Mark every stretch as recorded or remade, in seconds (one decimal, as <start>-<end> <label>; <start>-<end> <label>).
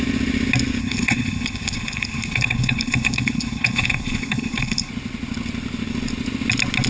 0.0-0.8 recorded; 0.8-4.9 remade; 4.9-6.9 recorded